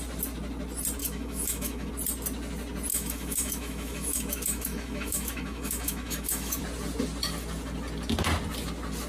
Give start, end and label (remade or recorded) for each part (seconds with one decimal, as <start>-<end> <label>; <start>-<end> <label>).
0.0-1.0 recorded; 1.0-1.9 remade; 1.9-2.9 recorded; 2.9-6.6 remade; 6.6-9.1 recorded